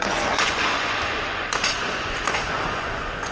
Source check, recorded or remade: remade